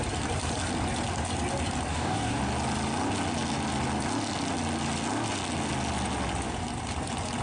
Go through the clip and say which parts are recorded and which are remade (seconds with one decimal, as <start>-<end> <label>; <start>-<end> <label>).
0.0-1.9 recorded; 1.9-2.4 remade; 2.4-7.4 recorded